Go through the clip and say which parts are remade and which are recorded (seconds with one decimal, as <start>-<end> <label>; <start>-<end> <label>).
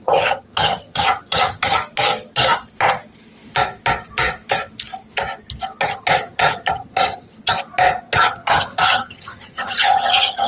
0.0-1.8 remade; 1.8-5.8 recorded; 5.8-7.3 remade; 7.3-8.0 recorded; 8.0-10.5 remade